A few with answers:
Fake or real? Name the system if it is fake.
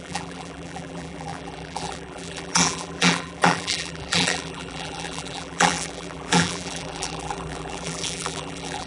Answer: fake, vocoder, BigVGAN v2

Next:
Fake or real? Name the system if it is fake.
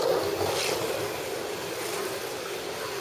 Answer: real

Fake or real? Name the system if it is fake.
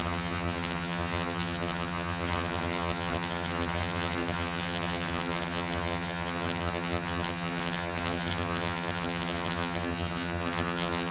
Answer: fake, vocoder, HiFi-GAN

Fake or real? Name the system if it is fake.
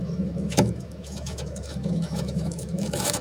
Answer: fake, autoencoder, DAC-VAE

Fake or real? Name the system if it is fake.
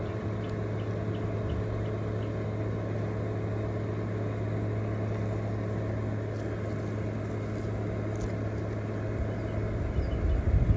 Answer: real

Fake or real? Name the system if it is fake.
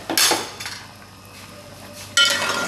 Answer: real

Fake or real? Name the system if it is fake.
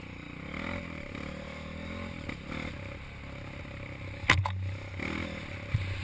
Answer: real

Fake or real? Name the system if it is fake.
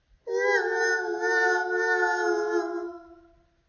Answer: real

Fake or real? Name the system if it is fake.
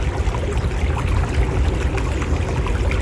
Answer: real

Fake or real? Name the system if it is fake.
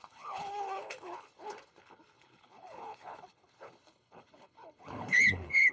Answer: fake, codec, HILCodec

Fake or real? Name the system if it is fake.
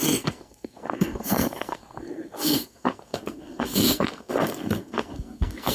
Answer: fake, codec, SNAC